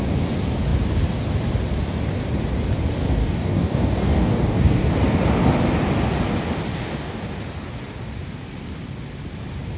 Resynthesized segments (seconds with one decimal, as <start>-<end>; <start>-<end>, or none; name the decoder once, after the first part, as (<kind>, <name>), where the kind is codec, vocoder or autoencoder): 3.2-4.9 (codec, DAC); 6.7-7.3